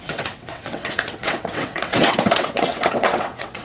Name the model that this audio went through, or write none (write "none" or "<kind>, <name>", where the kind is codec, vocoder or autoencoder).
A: vocoder, WaveNeXt